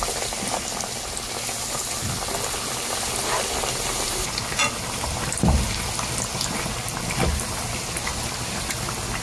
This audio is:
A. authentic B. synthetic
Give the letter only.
A